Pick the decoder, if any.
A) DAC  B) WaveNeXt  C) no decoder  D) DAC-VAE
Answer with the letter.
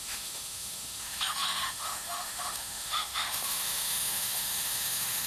D